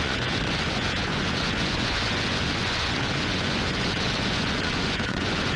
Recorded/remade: remade